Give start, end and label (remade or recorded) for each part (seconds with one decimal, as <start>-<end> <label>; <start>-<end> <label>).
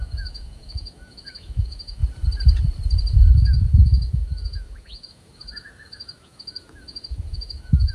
0.0-2.0 remade; 2.0-3.3 recorded; 3.3-7.9 remade